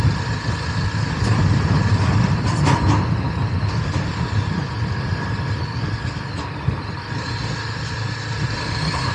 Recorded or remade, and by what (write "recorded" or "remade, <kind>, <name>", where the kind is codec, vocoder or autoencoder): recorded